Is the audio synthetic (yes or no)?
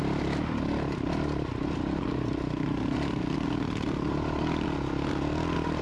no